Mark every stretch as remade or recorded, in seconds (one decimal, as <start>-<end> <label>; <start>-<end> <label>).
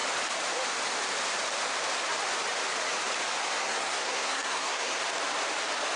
0.0-3.6 recorded; 3.6-5.0 remade; 5.0-6.0 recorded